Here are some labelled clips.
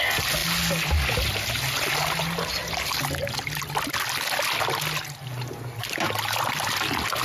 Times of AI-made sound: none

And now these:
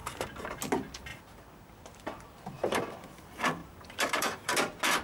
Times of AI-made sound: 0.0-0.6 (vocoder, BigVGAN v2); 1.1-2.8; 3.6-4.5

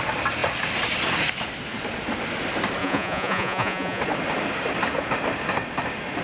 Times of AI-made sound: 2.8-4.0 (vocoder, Vocos)